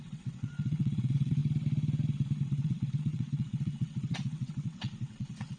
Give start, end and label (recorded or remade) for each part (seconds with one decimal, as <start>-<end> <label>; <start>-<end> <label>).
0.0-1.4 remade; 1.4-2.4 recorded; 2.4-5.6 remade